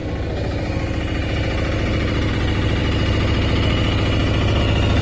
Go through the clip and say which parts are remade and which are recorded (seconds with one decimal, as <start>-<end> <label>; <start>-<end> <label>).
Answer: 0.0-5.0 recorded

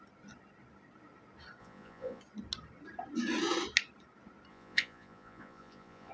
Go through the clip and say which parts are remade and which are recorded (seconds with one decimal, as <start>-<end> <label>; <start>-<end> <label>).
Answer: 0.0-1.6 recorded; 1.6-2.2 remade; 2.2-4.5 recorded; 4.5-6.1 remade

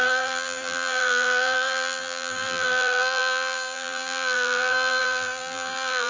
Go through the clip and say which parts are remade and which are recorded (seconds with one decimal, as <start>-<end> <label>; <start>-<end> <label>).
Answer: 0.0-6.1 remade

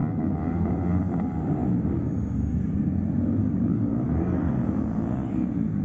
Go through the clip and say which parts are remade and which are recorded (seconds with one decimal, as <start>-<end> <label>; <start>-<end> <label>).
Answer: 0.0-3.4 recorded; 3.4-4.6 remade; 4.6-5.8 recorded

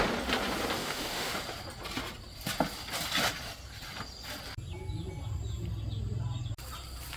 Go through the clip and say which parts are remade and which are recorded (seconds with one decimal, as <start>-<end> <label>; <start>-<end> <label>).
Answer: 0.0-0.8 recorded; 0.8-1.3 remade; 1.3-7.2 recorded

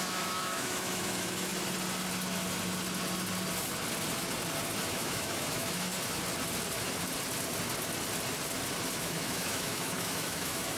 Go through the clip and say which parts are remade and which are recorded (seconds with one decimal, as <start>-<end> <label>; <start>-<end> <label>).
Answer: 0.0-1.5 remade; 1.5-4.9 recorded; 4.9-5.9 remade; 5.9-8.9 recorded; 8.9-10.8 remade

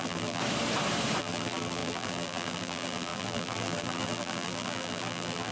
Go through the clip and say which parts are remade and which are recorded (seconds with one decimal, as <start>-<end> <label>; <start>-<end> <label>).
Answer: 0.0-0.4 remade; 0.4-1.2 recorded; 1.2-5.5 remade

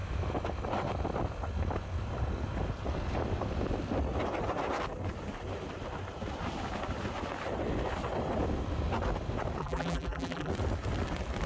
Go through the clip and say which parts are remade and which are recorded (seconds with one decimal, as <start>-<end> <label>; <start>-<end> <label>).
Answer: 0.0-9.6 recorded; 9.6-10.5 remade; 10.5-11.5 recorded